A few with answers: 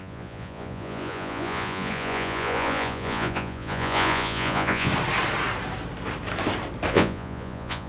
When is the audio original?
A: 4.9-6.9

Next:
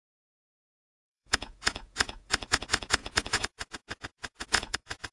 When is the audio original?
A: none

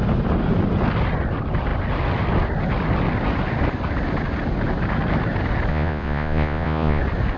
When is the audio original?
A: 0.0-5.7; 7.0-7.4